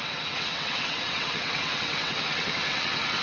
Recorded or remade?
remade